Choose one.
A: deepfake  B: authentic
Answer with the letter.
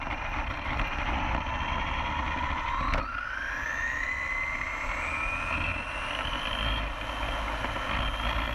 B